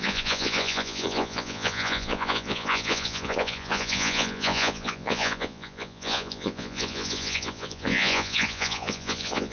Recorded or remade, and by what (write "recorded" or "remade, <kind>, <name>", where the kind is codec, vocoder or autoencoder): remade, vocoder, Vocos